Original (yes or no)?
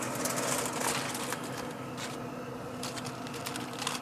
yes